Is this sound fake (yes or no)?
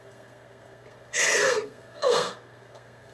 yes